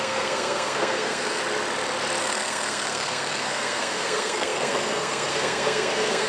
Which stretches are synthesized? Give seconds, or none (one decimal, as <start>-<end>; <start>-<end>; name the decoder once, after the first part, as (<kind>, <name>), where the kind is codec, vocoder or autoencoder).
0.0-1.4 (codec, SNAC); 2.2-6.3